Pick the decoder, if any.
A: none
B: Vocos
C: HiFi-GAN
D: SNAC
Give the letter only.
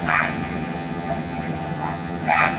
C